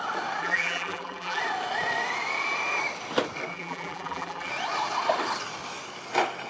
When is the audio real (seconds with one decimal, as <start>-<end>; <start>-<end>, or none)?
0.0-0.4; 1.4-3.5; 4.5-6.5